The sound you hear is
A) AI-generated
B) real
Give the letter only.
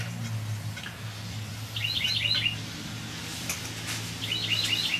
B